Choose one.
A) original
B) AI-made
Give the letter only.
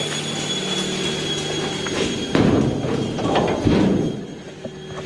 A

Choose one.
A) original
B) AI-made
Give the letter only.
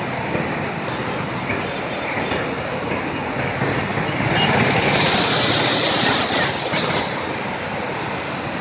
A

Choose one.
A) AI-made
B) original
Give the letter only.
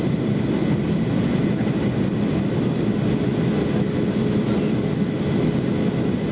B